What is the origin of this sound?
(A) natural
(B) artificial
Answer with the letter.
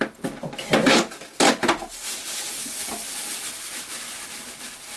A